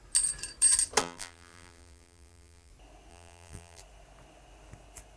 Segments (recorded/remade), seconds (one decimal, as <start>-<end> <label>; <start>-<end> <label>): 0.0-1.0 recorded; 1.0-2.7 remade; 2.7-3.1 recorded; 3.1-3.8 remade; 3.8-5.2 recorded